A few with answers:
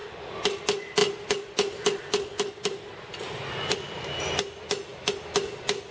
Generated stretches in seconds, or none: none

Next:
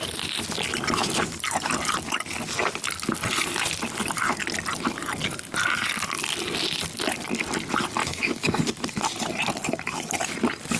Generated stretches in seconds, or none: 8.0-8.6 (autoencoder, DAC-VAE)

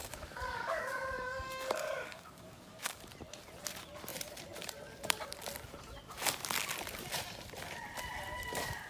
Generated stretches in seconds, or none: 0.0-3.0 (codec, DAC)

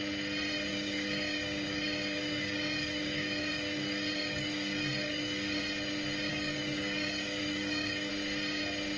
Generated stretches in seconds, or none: 0.7-5.6 (codec, DAC); 6.3-8.1

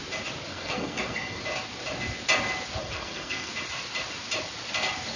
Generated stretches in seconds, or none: 0.5-1.4 (codec, SNAC); 2.8-3.5

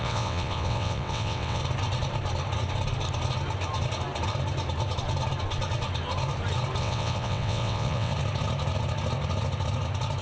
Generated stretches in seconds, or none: 0.0-1.6 (vocoder, WaveNeXt); 6.8-8.1